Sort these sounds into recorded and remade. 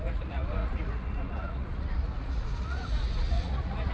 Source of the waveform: remade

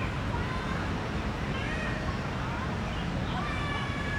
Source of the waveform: recorded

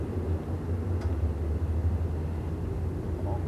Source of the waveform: recorded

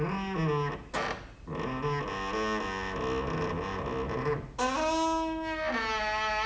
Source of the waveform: recorded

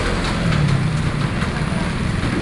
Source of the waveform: recorded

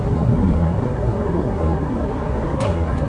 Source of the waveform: remade